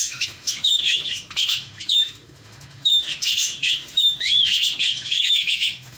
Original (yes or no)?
no